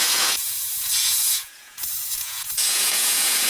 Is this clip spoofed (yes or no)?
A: yes